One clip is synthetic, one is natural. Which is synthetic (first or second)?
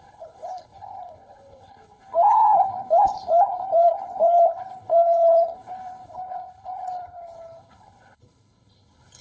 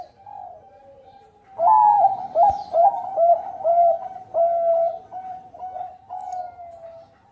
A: first